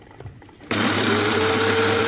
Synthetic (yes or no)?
yes